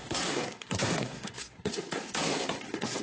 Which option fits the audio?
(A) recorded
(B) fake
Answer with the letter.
B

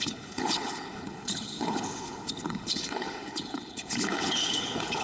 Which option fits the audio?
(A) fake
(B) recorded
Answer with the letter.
A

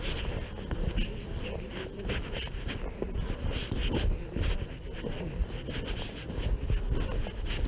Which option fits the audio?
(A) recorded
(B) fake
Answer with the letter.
A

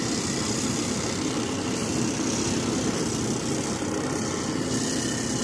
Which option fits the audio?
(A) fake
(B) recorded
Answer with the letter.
B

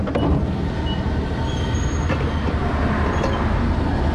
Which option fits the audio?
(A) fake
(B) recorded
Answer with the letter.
B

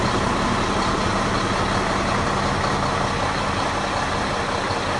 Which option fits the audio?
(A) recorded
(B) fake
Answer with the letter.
A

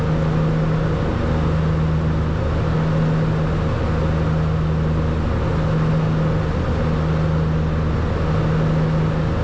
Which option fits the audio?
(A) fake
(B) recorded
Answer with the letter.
B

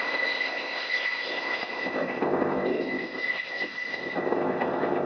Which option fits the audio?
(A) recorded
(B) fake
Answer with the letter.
B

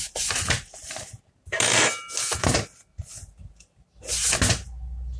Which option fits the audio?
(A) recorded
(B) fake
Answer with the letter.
A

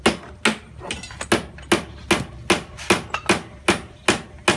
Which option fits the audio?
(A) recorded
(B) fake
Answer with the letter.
A